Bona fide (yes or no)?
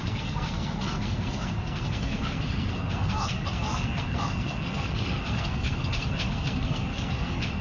no